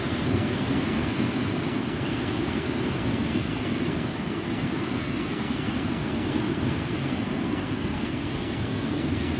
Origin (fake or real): fake